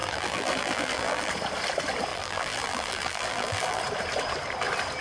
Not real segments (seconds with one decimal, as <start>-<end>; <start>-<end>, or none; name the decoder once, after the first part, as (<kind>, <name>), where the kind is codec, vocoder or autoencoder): 0.0-1.3 (vocoder, BigVGAN v2); 2.1-3.8